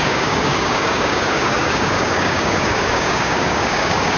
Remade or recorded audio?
remade